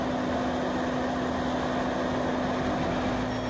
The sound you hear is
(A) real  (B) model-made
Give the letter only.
A